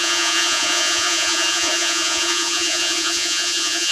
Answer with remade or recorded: remade